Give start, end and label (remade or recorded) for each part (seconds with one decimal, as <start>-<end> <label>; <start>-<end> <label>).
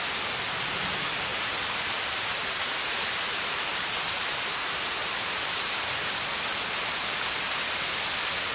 0.0-1.3 recorded; 1.3-6.1 remade; 6.1-8.5 recorded